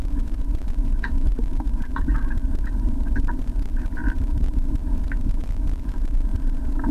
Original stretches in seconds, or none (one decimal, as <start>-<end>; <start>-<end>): 2.1-2.7